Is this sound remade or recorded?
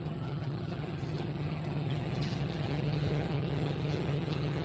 remade